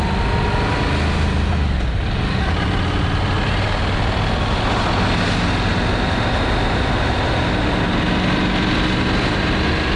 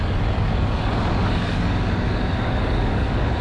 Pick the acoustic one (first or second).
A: first